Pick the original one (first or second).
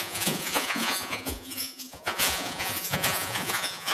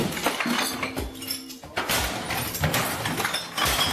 second